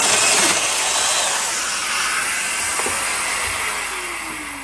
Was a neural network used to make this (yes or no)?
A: no